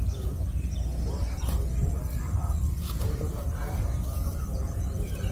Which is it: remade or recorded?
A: recorded